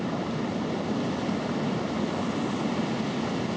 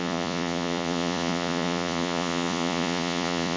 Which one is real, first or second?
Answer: first